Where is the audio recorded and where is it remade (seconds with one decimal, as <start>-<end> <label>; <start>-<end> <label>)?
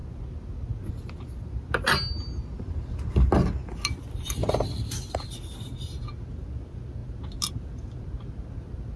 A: 0.0-9.0 recorded